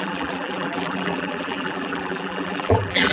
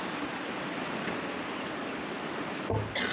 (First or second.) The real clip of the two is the second